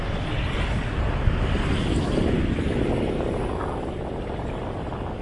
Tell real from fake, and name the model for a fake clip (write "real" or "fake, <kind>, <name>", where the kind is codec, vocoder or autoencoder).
real